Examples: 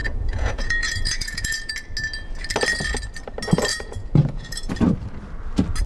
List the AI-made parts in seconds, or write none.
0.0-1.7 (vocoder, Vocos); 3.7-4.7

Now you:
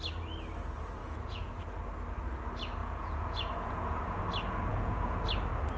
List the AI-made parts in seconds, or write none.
1.0-1.6 (vocoder, Vocos); 2.8-4.2; 4.7-5.2

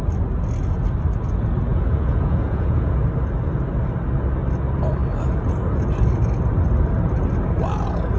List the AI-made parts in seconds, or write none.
1.7-2.9 (vocoder, Vocos)